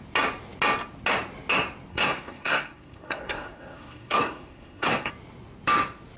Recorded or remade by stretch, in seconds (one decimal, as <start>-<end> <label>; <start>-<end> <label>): 0.0-1.9 recorded; 1.9-5.1 remade; 5.1-6.2 recorded